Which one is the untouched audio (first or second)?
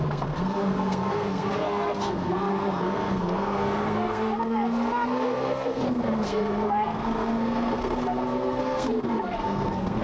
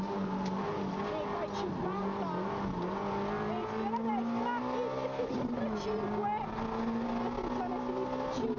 second